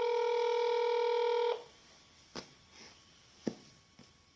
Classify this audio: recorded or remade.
recorded